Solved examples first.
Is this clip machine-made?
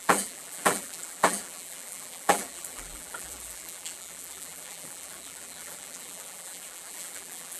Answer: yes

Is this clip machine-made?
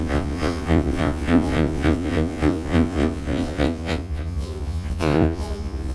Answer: yes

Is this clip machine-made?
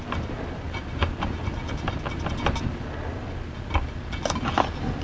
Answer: no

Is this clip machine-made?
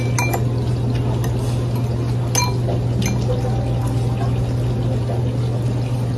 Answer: no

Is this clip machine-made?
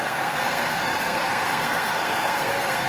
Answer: yes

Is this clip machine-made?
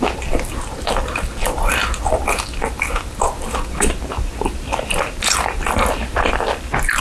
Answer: no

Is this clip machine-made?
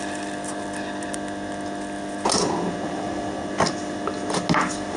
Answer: no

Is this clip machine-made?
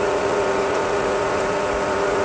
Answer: yes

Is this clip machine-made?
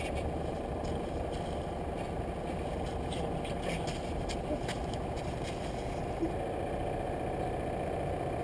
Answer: no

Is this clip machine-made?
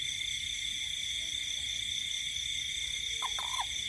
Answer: no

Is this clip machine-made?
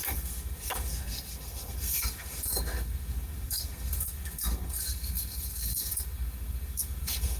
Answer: yes